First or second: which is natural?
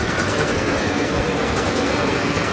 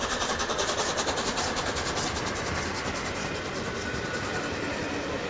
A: second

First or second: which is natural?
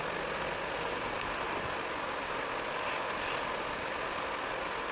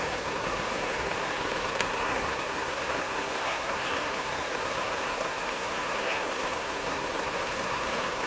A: first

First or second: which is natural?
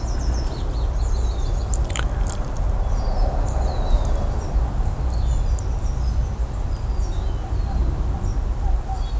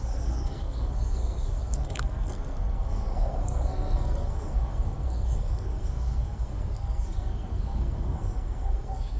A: first